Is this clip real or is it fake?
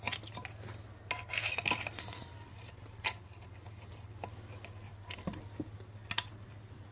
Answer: real